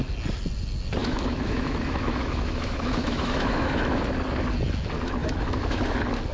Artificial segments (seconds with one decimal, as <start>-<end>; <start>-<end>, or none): 1.0-4.0; 5.2-5.8